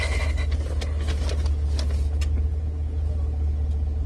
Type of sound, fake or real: real